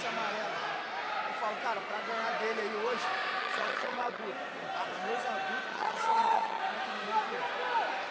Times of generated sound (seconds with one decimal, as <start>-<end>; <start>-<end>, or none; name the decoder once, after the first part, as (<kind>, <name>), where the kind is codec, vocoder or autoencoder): 3.4-4.2 (vocoder, HiFi-GAN); 5.7-6.6